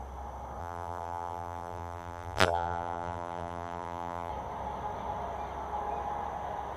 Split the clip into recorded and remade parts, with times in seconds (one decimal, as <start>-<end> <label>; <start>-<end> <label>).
0.0-0.6 recorded; 0.6-4.3 remade; 4.3-6.8 recorded